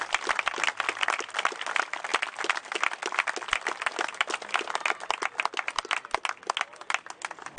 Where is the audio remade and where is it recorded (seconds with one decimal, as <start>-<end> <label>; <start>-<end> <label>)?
0.0-7.6 recorded